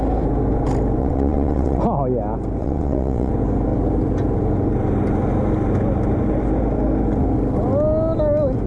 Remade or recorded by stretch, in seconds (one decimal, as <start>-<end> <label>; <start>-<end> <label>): 0.0-1.0 recorded; 1.0-1.8 remade; 1.8-2.6 recorded; 2.6-3.3 remade; 3.3-8.7 recorded